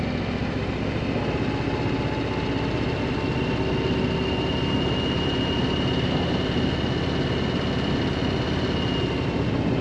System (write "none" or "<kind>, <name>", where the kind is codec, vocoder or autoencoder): none